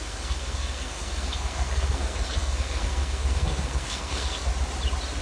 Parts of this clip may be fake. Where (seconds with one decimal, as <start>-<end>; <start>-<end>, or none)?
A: 0.0-4.5